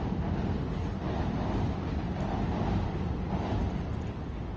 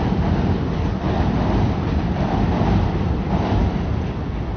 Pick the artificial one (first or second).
second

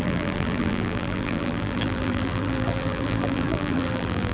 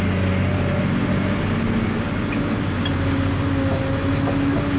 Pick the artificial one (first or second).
first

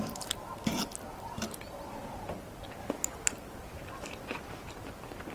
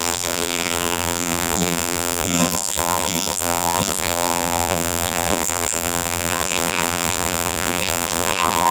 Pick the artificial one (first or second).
second